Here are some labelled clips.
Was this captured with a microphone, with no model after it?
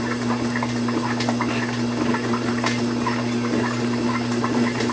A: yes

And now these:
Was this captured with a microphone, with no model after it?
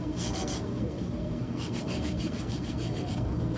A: no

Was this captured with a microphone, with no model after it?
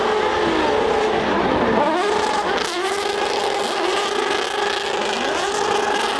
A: yes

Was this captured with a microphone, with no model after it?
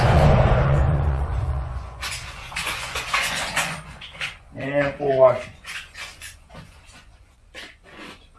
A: no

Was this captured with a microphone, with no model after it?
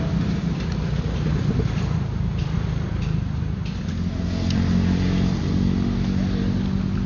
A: yes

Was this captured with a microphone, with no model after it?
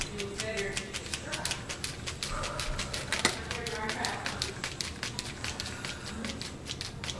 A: yes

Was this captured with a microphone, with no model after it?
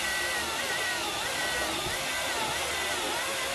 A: yes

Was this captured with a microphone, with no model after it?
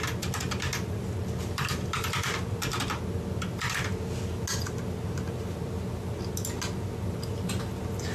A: yes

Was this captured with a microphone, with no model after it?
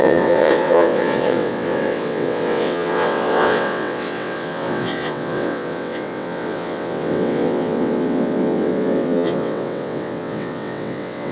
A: no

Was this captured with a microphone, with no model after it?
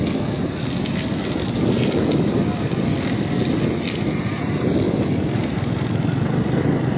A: no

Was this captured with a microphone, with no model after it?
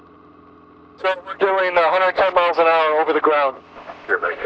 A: yes